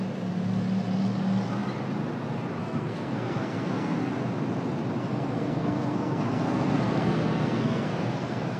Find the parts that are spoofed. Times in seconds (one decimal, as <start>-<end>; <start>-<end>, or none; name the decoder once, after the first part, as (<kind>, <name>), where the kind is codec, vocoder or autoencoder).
2.6-4.1 (codec, SNAC); 5.0-8.6